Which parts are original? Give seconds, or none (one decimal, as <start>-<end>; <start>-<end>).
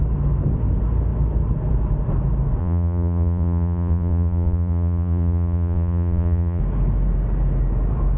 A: 0.0-2.6; 6.6-8.2